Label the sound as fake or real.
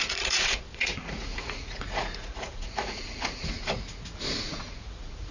fake